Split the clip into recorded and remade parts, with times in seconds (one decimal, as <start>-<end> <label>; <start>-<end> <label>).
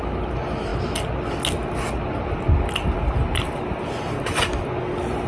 0.0-5.3 recorded